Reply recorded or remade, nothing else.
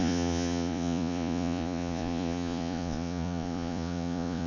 remade